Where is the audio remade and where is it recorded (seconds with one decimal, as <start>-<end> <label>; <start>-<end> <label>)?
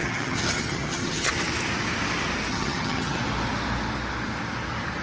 0.0-1.3 remade; 1.3-2.5 recorded; 2.5-3.2 remade; 3.2-5.0 recorded